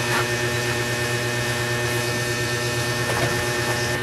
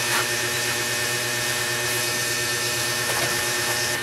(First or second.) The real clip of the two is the first